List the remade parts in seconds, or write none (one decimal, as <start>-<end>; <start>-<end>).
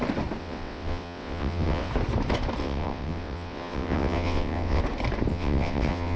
0.4-1.9; 2.6-4.8; 5.3-6.2